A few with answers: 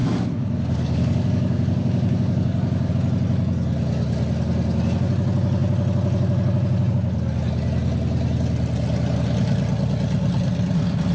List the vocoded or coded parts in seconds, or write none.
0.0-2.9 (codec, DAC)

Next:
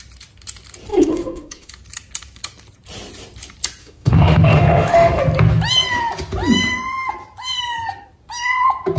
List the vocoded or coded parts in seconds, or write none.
0.9-1.7 (autoencoder, DAC-VAE); 3.8-5.2

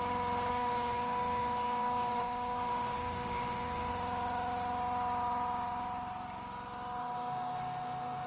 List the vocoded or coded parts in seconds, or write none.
0.5-3.9 (autoencoder, DAC-VAE); 7.0-8.3

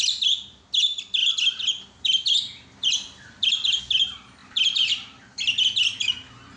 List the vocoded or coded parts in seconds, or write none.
1.2-3.8 (vocoder, BigVGAN v2); 4.4-5.6

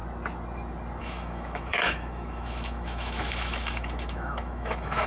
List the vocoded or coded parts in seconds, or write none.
1.0-5.1 (autoencoder, DAC-VAE)